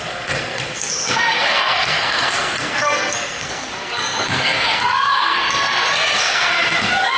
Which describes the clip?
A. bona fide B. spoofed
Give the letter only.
B